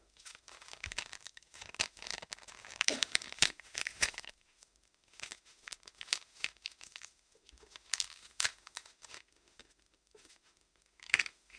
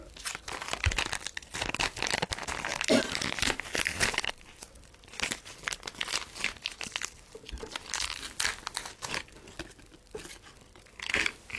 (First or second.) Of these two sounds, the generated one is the first